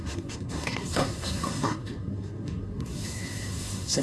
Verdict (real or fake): fake